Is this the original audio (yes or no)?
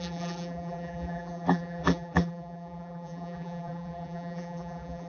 no